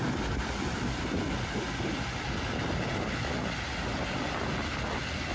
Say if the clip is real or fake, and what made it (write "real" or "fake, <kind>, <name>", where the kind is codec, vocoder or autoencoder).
real